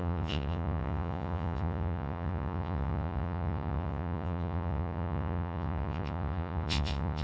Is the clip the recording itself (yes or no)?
no